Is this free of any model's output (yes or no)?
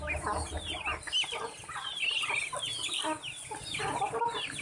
yes